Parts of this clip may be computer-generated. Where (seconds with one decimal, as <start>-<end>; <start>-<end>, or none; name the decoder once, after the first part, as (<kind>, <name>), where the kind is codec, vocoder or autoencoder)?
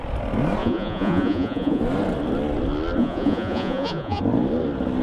0.6-1.8 (vocoder, Vocos); 3.0-4.2